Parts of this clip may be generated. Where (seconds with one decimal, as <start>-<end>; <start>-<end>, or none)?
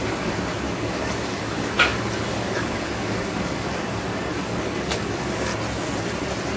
0.0-5.5